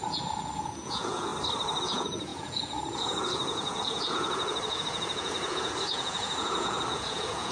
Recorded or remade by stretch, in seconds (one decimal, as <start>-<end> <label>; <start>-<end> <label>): 0.0-1.3 remade; 1.3-1.8 recorded; 1.8-7.5 remade